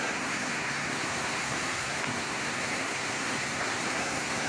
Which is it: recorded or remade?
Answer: remade